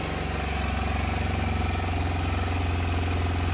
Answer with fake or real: real